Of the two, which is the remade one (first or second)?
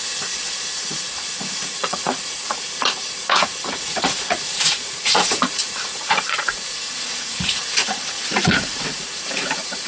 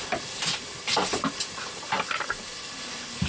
first